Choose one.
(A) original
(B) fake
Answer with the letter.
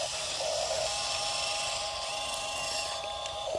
A